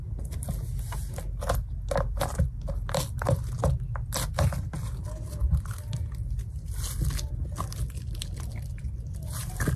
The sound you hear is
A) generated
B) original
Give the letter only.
B